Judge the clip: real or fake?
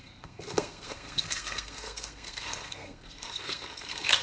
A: fake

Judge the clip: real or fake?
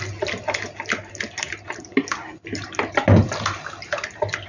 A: real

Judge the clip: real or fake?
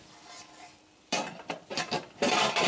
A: fake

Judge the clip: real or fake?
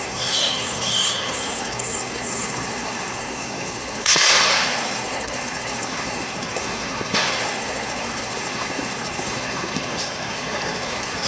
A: fake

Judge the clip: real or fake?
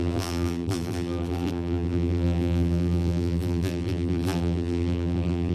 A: fake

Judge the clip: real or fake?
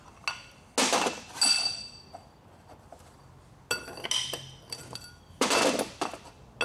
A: real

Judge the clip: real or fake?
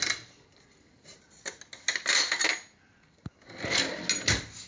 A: real